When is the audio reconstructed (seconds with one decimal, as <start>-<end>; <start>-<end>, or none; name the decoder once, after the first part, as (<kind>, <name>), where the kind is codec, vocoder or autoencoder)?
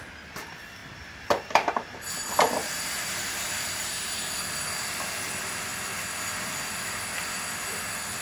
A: 0.8-5.3 (vocoder, BigVGAN v2)